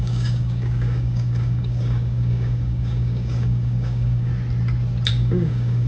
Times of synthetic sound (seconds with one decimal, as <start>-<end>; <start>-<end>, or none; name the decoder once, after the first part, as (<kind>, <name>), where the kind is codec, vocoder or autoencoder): 0.0-4.3 (codec, DAC); 5.1-5.9